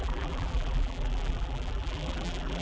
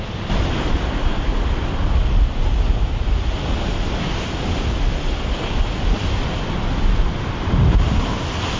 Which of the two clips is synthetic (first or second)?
first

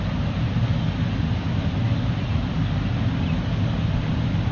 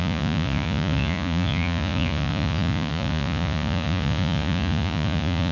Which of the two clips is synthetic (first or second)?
second